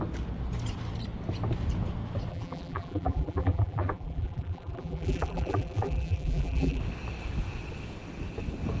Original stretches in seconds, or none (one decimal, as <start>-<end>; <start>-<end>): 0.0-2.3; 6.8-8.8